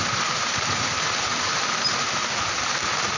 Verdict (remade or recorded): remade